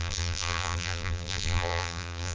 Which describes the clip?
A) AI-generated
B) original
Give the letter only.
A